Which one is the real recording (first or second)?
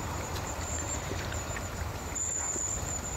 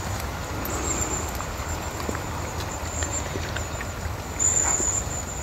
second